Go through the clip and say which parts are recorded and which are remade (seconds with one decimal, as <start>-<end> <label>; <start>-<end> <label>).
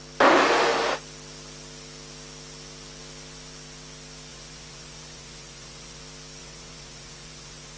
0.0-4.3 recorded; 4.3-6.0 remade; 6.0-6.4 recorded; 6.4-7.8 remade